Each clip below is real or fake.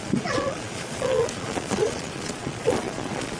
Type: fake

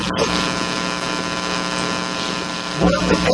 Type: real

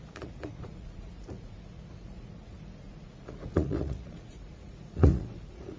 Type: fake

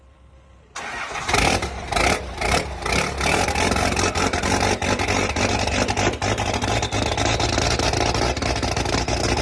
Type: real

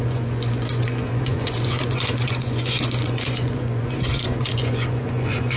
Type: fake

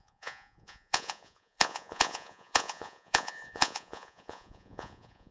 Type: fake